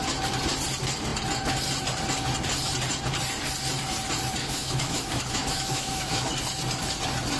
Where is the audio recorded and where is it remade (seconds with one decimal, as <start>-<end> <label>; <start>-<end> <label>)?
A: 0.0-4.4 recorded; 4.4-6.3 remade; 6.3-7.4 recorded